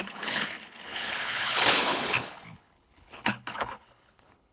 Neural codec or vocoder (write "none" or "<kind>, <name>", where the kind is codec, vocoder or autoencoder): codec, HILCodec